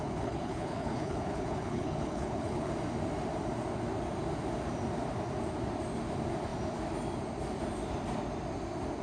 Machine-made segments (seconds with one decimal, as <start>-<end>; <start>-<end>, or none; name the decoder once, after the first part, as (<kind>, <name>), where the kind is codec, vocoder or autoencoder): 0.0-2.7 (codec, HILCodec)